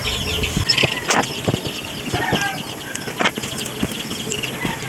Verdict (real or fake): real